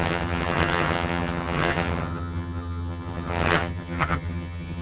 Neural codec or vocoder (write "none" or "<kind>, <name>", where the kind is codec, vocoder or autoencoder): vocoder, HiFi-GAN